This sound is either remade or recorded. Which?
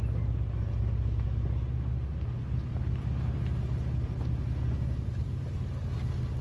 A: recorded